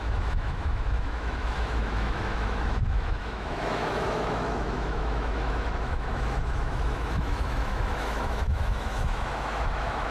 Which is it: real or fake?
fake